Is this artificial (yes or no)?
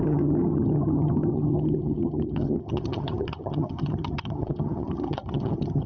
yes